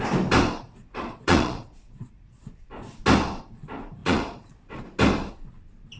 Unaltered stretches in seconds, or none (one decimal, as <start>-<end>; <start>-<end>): 0.0-0.6; 3.0-4.0; 4.8-6.0